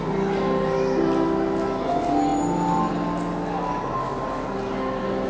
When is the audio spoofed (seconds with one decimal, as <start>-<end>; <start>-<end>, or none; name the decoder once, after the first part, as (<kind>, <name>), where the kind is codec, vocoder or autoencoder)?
none